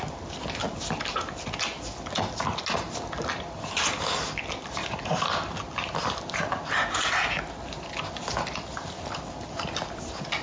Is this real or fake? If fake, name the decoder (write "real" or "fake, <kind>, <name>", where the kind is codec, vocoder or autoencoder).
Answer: real